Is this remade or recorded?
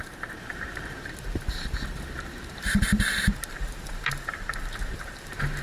remade